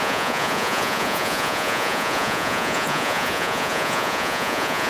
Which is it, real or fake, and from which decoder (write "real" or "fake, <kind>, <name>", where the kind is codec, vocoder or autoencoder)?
fake, vocoder, Vocos